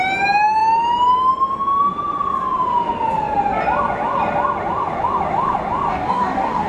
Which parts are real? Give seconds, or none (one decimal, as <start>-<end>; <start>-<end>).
0.0-5.9